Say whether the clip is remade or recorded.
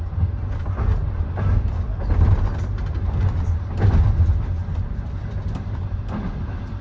recorded